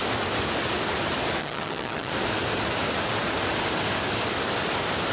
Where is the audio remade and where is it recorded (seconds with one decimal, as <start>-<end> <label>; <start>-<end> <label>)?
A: 0.0-1.4 recorded; 1.4-2.1 remade; 2.1-5.1 recorded